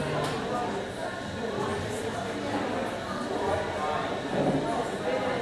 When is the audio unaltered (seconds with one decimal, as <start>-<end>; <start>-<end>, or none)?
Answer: 0.0-5.4